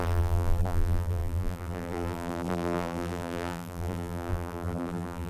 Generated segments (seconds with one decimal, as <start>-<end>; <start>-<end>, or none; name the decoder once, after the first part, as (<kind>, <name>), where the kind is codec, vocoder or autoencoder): 0.0-5.3 (vocoder, BigVGAN v2)